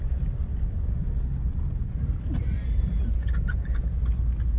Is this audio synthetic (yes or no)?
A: no